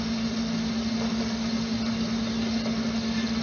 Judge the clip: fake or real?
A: real